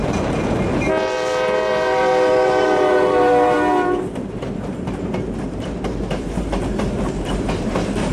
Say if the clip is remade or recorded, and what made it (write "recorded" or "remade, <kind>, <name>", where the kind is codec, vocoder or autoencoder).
remade, vocoder, BigVGAN v2